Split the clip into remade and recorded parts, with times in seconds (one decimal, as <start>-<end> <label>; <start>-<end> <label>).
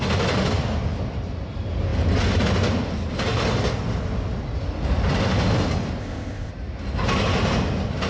0.0-6.0 recorded; 6.0-6.5 remade; 6.5-8.1 recorded